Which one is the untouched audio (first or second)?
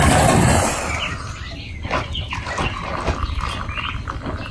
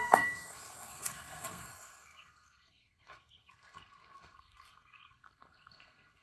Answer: first